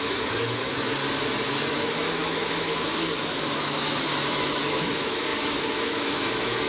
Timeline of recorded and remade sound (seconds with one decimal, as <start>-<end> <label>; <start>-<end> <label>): 0.0-1.0 remade; 1.0-1.7 recorded; 1.7-6.7 remade